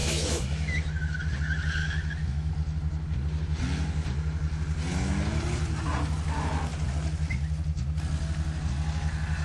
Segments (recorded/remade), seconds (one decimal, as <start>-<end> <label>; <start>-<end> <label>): 0.0-1.1 remade; 1.1-1.8 recorded; 1.8-2.5 remade; 2.5-9.4 recorded